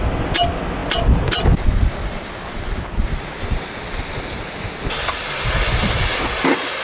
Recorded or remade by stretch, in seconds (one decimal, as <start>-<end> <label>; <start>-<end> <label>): 0.0-6.8 recorded